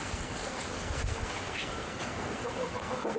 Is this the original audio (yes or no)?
no